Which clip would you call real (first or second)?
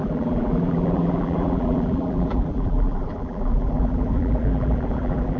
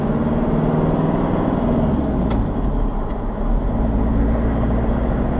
second